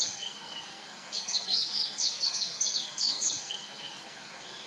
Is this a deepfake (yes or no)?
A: yes